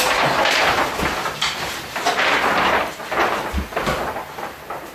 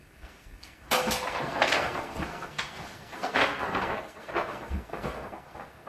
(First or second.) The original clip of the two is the first